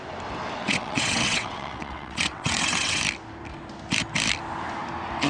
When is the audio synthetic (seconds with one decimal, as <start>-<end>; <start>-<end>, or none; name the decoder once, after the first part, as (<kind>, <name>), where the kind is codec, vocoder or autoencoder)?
0.6-3.0 (vocoder, WaveNeXt)